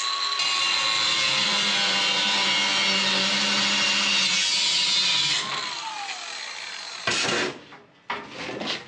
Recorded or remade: recorded